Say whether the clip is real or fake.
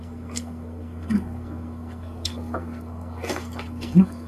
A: fake